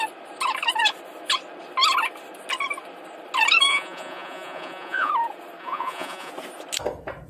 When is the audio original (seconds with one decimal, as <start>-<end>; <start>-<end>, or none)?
0.0-3.7; 5.1-5.6; 6.3-7.3